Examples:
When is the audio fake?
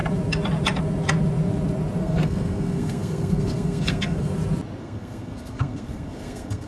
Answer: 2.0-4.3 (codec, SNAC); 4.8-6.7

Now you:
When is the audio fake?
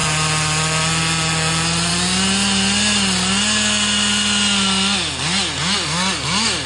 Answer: none